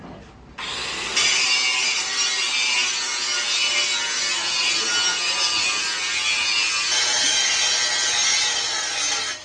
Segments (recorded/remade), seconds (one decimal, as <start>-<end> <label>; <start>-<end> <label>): 0.0-7.3 recorded; 7.3-7.8 remade; 7.8-9.4 recorded